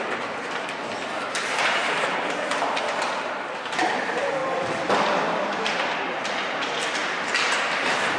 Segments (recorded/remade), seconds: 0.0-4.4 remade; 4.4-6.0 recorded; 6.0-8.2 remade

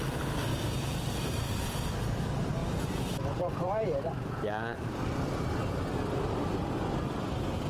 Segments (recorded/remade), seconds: 0.0-0.5 recorded; 0.5-1.5 remade; 1.5-2.6 recorded; 2.6-5.4 remade; 5.4-7.7 recorded

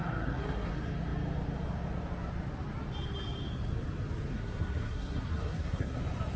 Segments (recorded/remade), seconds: 0.0-0.7 remade; 0.7-4.3 recorded; 4.3-6.0 remade; 6.0-6.4 recorded